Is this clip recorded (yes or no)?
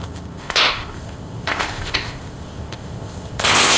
no